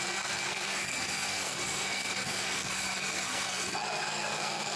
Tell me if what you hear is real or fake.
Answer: fake